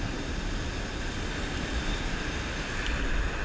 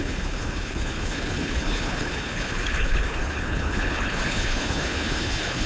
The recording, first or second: first